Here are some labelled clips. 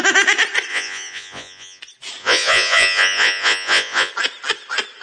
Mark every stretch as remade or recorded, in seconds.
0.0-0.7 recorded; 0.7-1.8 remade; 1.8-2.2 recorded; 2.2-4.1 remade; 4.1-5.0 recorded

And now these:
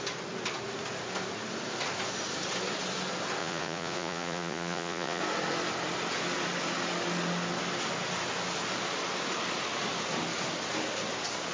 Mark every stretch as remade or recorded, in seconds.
0.0-3.4 recorded; 3.4-5.2 remade; 5.2-11.5 recorded

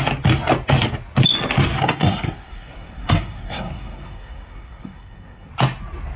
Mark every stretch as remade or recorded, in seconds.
0.0-1.8 recorded; 1.8-5.5 remade; 5.5-6.2 recorded

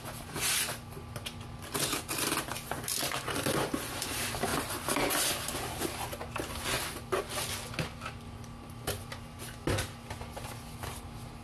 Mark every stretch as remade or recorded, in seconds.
0.0-11.4 recorded

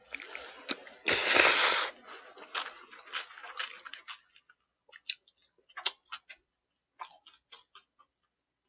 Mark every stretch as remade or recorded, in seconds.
0.0-8.7 recorded

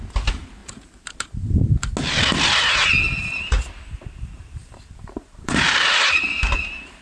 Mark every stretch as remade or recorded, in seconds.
0.0-0.6 recorded; 0.6-1.9 remade; 1.9-4.6 recorded; 4.6-6.2 remade; 6.2-7.0 recorded